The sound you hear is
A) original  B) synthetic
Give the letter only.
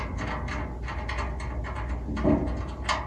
A